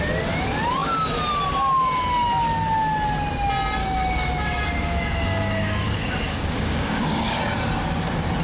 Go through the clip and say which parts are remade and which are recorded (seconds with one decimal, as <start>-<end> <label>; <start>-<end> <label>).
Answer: 0.0-3.8 recorded; 3.8-7.4 remade; 7.4-8.4 recorded